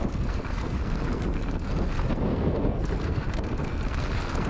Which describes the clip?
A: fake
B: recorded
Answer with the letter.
A